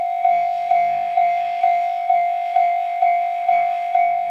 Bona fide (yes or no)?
no